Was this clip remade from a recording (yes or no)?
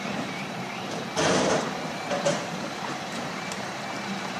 yes